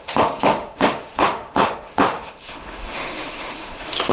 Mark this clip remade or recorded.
remade